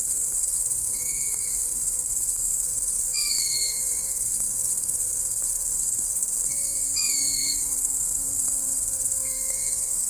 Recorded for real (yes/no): no